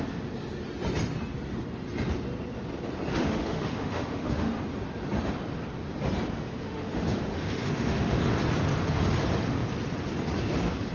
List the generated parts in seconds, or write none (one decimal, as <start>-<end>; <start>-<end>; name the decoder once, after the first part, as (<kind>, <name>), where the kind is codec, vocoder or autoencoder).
3.1-4.6 (autoencoder, DAC-VAE); 6.6-8.3